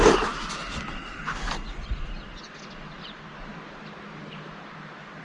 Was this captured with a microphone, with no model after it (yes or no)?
yes